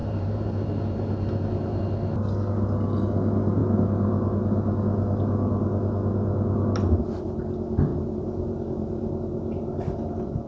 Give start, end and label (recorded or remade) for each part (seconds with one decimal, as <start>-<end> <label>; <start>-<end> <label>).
0.0-1.8 remade; 1.8-7.9 recorded; 7.9-10.1 remade; 10.1-10.5 recorded